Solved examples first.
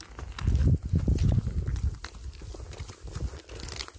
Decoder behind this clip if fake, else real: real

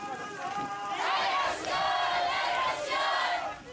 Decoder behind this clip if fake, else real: real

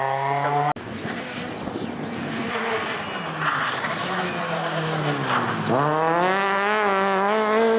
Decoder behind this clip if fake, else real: real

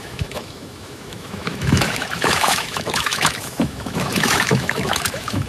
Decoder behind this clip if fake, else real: fake, autoencoder, DAC-VAE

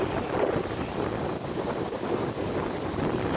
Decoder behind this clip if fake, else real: real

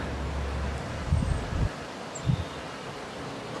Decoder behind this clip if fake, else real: real